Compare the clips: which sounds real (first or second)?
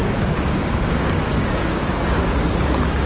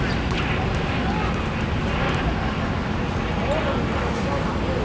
second